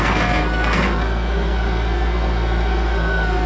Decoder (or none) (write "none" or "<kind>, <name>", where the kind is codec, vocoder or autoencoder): codec, SNAC